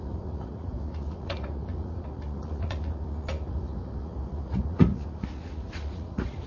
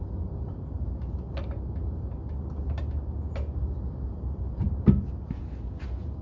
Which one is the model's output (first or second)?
first